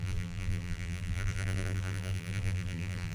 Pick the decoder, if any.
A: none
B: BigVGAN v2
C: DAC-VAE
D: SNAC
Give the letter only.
B